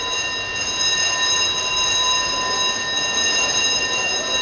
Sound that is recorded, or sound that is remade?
recorded